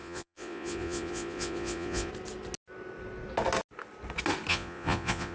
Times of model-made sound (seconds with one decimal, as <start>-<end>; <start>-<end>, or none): 0.0-2.1; 4.5-5.3